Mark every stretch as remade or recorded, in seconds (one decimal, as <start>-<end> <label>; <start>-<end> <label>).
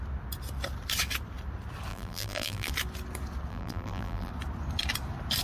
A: 0.0-1.9 recorded; 1.9-2.7 remade; 2.7-3.5 recorded; 3.5-4.3 remade; 4.3-5.4 recorded